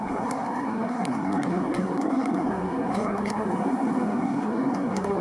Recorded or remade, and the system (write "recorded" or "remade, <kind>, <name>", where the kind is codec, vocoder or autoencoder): remade, codec, SNAC